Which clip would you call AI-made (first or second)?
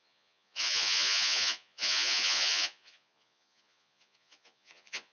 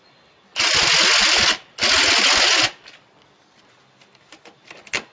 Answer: first